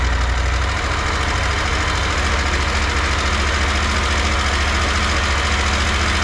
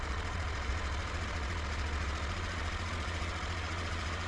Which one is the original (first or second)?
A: first